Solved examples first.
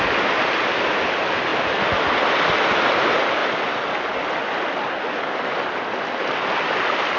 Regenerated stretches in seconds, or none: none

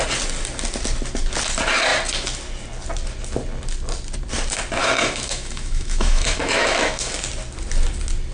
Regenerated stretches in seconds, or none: 4.8-7.1

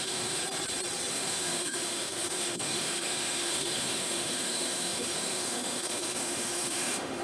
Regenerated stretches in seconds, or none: 0.0-0.4; 1.1-7.2

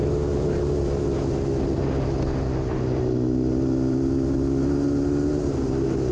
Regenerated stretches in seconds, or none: none

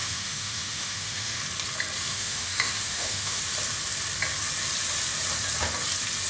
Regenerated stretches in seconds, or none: 0.0-1.4; 2.1-3.4

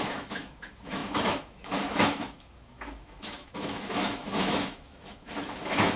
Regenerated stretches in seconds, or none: 0.0-6.0

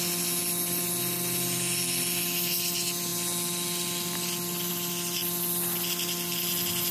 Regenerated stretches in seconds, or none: none

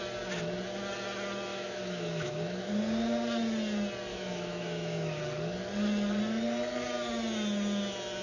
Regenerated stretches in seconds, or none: 1.5-2.7; 4.1-5.2